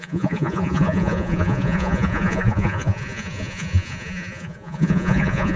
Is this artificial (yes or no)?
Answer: yes